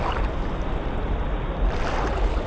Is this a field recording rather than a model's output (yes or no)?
yes